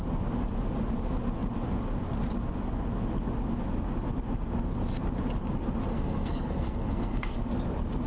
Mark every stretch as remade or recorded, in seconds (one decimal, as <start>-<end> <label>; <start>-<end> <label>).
0.0-5.9 recorded; 5.9-7.4 remade; 7.4-8.1 recorded